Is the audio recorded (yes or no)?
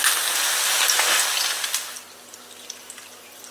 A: yes